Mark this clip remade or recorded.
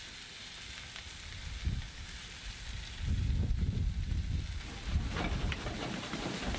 recorded